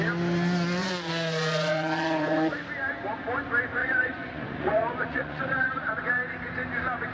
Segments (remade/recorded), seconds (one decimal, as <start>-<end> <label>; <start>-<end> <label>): 0.0-0.8 recorded; 0.8-2.5 remade; 2.5-3.8 recorded; 3.8-6.0 remade; 6.0-7.1 recorded